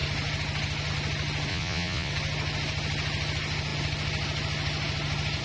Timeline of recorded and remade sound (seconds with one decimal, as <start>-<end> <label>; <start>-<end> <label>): 0.0-1.5 recorded; 1.5-2.1 remade; 2.1-5.4 recorded